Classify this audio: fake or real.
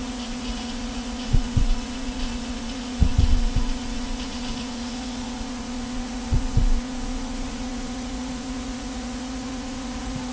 fake